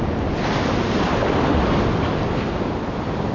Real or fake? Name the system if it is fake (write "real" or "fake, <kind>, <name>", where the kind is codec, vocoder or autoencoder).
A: real